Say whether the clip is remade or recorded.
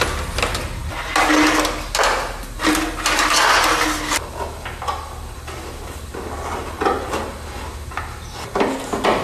recorded